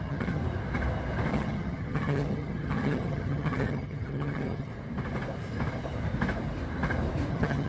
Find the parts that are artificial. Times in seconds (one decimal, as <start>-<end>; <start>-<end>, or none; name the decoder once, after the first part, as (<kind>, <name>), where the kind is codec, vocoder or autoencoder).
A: 0.0-0.4 (vocoder, HiFi-GAN); 1.3-4.7; 7.3-7.7